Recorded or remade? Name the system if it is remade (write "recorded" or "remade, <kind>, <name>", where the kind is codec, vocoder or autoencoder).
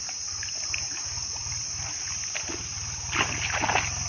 recorded